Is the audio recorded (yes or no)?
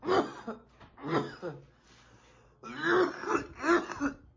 yes